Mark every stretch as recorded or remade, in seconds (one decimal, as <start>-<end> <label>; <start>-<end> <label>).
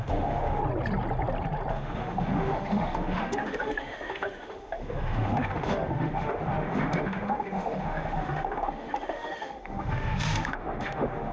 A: 0.0-0.6 remade; 0.6-1.7 recorded; 1.7-11.3 remade